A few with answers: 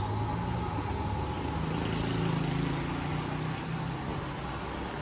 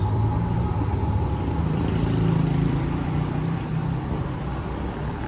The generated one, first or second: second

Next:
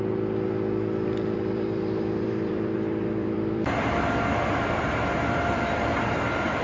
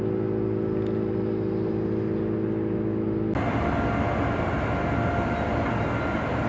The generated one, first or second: first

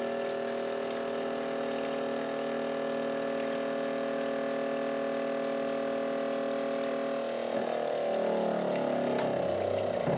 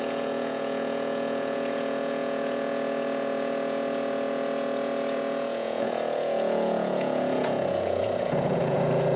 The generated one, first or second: second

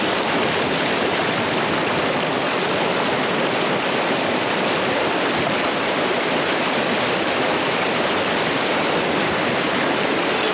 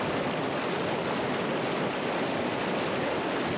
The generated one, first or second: first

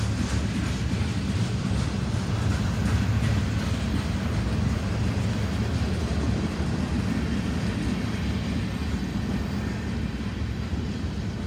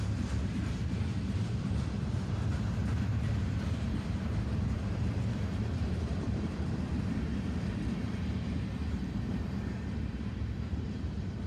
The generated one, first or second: second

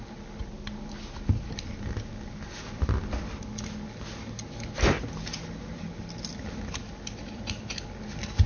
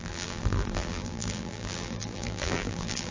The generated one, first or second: second